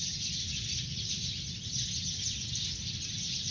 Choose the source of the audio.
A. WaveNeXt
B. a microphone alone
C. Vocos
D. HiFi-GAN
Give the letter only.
B